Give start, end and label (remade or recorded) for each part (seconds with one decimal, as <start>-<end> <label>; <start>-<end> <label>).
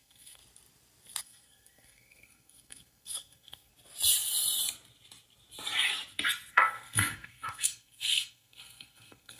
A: 0.0-0.4 remade; 0.4-1.2 recorded; 1.2-3.7 remade; 3.7-6.5 recorded; 6.5-9.4 remade